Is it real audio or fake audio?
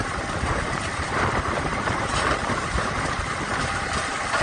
fake